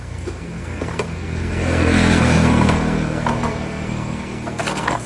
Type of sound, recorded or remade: remade